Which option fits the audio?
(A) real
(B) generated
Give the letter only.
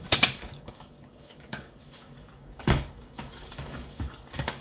B